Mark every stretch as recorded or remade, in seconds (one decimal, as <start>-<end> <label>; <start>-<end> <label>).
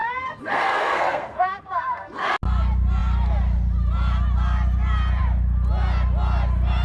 0.0-2.3 remade; 2.3-6.8 recorded